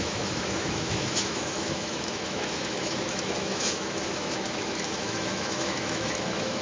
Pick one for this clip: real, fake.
fake